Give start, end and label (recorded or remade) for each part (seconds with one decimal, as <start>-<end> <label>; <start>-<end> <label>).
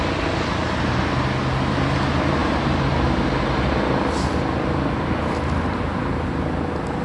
0.0-7.0 recorded